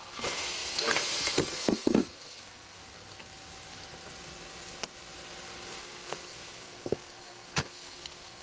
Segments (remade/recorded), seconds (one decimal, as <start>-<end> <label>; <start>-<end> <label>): 0.0-2.8 remade; 2.8-5.8 recorded; 5.8-8.4 remade